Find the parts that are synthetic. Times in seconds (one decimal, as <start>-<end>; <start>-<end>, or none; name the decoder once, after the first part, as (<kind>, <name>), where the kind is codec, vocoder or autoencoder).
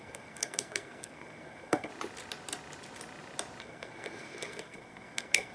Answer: 0.0-1.9 (codec, SNAC); 3.6-5.5